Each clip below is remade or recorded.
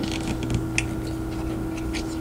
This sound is recorded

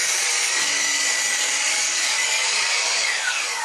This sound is remade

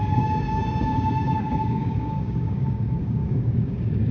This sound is remade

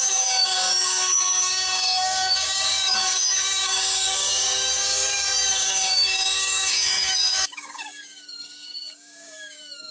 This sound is remade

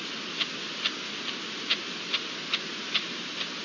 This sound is recorded